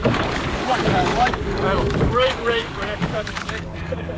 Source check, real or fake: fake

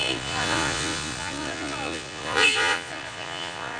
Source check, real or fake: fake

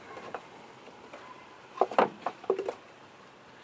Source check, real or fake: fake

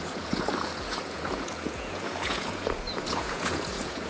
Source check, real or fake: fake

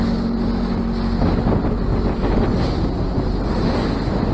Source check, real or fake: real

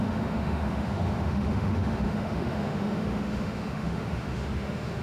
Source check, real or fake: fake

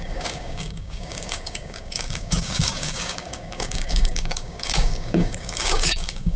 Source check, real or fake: fake